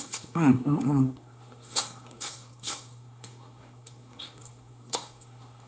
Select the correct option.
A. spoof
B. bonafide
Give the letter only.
A